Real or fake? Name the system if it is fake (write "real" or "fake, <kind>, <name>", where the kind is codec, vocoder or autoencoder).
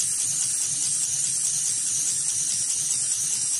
real